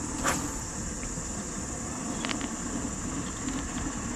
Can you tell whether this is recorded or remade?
recorded